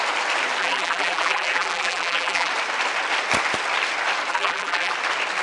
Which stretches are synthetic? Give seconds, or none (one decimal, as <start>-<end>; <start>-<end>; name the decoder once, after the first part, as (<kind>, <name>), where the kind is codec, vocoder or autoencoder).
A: 0.6-2.5 (vocoder, BigVGAN v2); 4.3-4.9